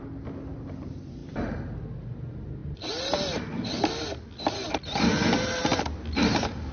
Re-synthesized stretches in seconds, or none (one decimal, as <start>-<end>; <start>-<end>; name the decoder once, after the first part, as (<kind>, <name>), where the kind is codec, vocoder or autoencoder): none